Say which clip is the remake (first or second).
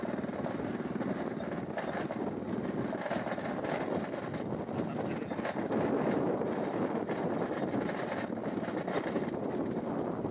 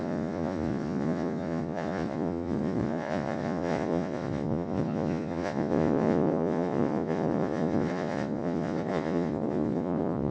second